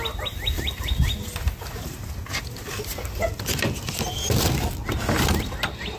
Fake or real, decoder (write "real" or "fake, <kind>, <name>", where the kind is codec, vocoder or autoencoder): real